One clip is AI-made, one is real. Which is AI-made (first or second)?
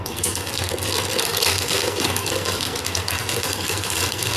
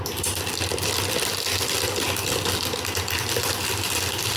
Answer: first